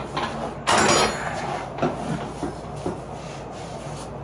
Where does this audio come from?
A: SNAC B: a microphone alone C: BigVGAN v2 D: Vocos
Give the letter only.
B